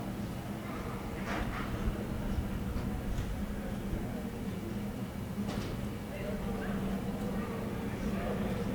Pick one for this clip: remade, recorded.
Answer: recorded